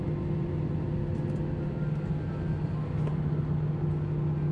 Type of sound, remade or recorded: recorded